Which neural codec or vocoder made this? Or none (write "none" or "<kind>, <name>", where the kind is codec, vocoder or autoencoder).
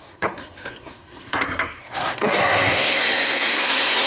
codec, SNAC